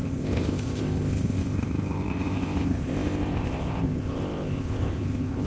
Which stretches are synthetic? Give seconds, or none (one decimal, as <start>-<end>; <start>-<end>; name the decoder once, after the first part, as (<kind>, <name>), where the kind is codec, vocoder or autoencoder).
0.0-5.5 (codec, ZipCodec)